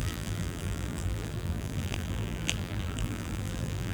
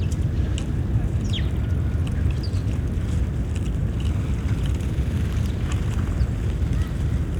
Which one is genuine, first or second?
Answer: second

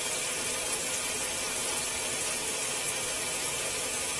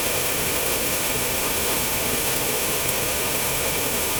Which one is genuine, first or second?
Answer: first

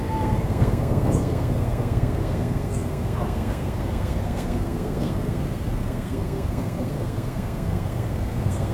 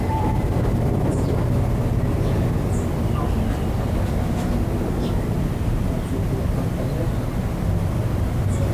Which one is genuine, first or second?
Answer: second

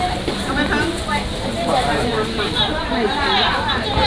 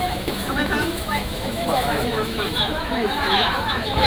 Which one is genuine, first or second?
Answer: first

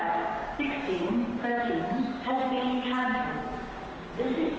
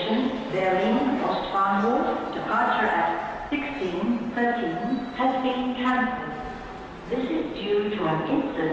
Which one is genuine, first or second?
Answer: second